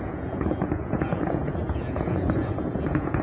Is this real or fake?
fake